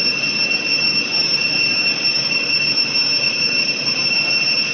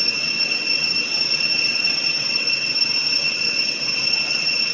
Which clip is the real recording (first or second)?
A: first